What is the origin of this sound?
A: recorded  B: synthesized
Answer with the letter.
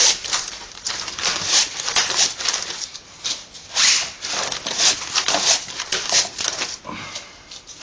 B